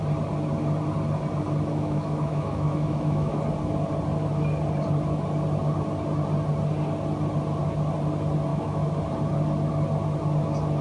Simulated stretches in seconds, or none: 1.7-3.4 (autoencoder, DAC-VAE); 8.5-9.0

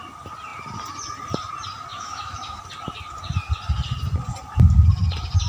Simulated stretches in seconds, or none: 1.9-2.6 (autoencoder, DAC-VAE)

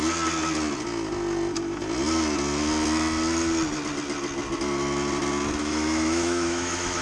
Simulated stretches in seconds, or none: 5.6-7.0 (autoencoder, DAC-VAE)